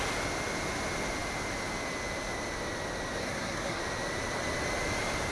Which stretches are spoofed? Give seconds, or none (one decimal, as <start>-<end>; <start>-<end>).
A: 3.2-3.8